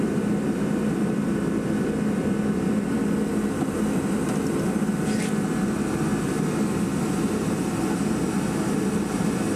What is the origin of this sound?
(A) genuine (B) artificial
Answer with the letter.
A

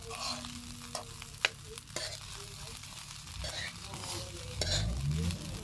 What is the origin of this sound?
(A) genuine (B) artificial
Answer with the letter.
A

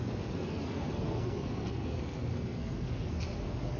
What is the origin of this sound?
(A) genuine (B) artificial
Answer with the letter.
B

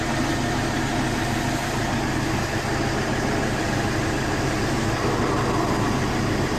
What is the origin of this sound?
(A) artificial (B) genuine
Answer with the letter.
B